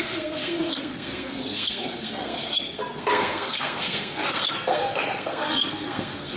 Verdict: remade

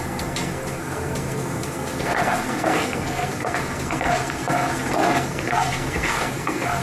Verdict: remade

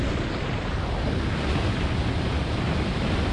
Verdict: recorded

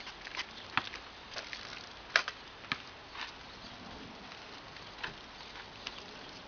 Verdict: recorded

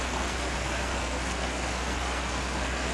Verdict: remade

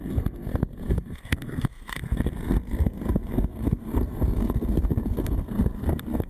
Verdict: remade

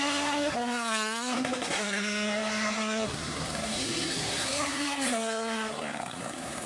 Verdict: remade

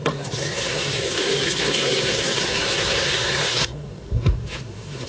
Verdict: remade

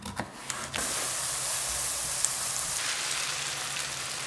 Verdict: recorded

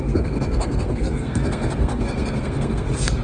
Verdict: remade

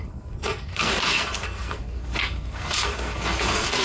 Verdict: remade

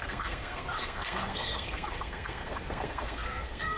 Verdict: remade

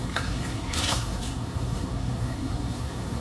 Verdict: remade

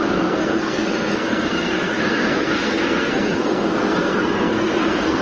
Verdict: remade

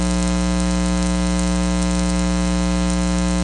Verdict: recorded